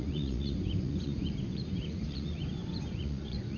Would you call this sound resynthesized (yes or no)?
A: yes